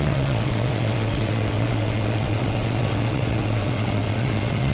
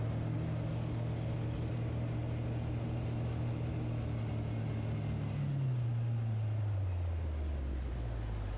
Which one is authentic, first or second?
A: second